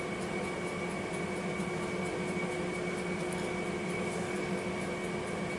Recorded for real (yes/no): yes